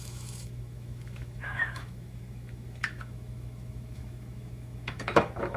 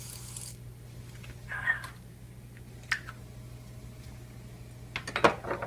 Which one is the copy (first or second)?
first